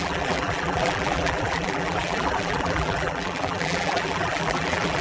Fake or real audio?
fake